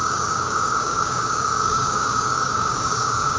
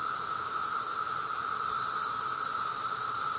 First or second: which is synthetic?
first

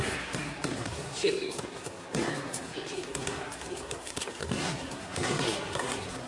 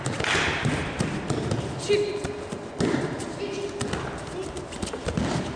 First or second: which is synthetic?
first